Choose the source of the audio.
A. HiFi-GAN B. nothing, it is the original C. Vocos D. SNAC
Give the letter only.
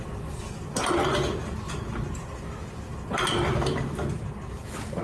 B